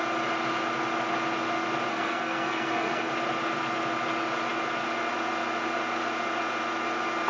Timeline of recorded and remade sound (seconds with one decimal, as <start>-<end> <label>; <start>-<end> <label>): 0.0-1.9 recorded; 1.9-3.1 remade; 3.1-7.3 recorded